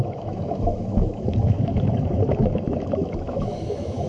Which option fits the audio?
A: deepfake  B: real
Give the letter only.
A